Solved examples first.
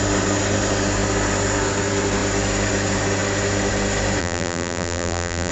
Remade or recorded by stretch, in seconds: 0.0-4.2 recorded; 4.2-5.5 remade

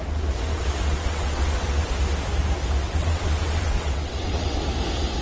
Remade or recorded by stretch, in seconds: 0.0-0.5 recorded; 0.5-1.9 remade; 1.9-2.8 recorded; 2.8-4.6 remade; 4.6-5.2 recorded

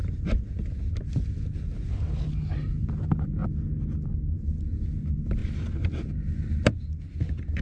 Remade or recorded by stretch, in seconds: 0.0-0.7 remade; 0.7-5.4 recorded; 5.4-5.9 remade; 5.9-7.6 recorded

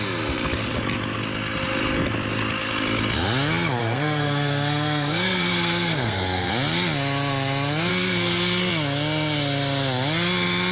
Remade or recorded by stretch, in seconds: 0.0-3.8 recorded; 3.8-6.5 remade; 6.5-7.9 recorded; 7.9-8.7 remade; 8.7-10.7 recorded

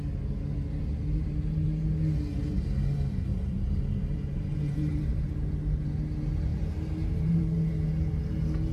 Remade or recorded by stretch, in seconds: 0.0-3.3 recorded; 3.3-5.3 remade; 5.3-6.5 recorded; 6.5-7.7 remade; 7.7-8.7 recorded